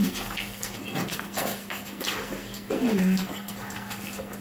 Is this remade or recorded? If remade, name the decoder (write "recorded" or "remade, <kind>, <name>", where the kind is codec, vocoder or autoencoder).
remade, codec, SNAC